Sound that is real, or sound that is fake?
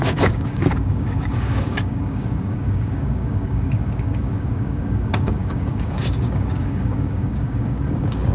fake